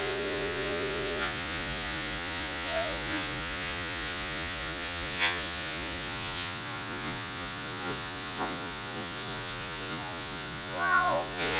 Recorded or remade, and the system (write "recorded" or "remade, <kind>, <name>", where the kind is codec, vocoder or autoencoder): remade, vocoder, Vocos